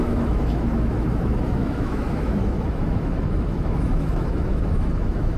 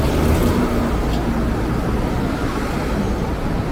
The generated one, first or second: first